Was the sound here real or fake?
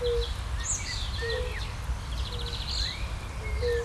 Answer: real